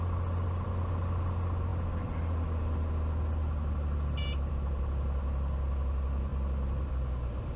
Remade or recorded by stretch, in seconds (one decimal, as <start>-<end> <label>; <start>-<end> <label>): 0.0-7.6 recorded